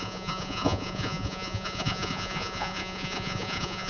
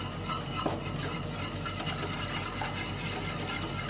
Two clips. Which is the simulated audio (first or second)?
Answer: first